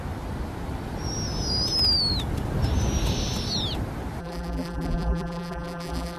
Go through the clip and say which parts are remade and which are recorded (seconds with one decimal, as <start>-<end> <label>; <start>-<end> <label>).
0.0-4.2 recorded; 4.2-6.2 remade